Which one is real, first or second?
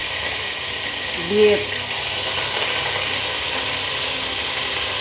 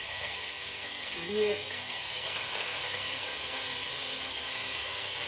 first